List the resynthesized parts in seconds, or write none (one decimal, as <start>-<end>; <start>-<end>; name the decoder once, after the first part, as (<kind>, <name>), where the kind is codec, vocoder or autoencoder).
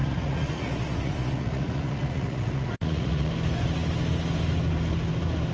0.0-3.3 (vocoder, Vocos)